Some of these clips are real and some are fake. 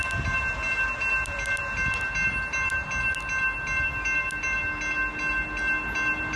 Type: real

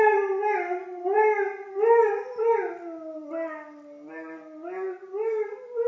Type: real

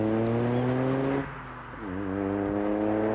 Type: real